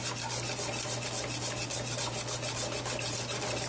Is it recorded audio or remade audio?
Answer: recorded